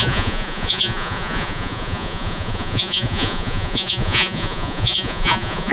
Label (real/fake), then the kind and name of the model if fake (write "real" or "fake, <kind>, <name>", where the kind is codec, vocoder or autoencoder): fake, vocoder, Vocos